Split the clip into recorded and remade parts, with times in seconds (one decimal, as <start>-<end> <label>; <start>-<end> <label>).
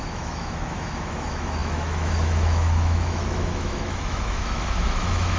0.0-5.4 remade